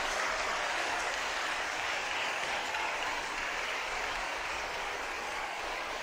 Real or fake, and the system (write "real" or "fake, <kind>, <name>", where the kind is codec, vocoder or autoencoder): fake, codec, DAC